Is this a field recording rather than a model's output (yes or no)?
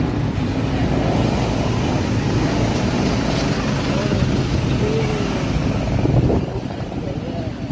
yes